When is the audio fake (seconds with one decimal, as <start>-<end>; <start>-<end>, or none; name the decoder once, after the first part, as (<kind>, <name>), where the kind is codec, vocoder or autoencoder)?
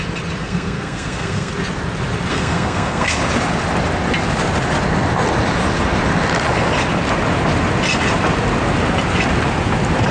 0.4-1.5 (codec, SNAC); 2.3-3.2